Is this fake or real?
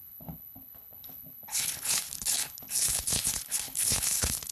fake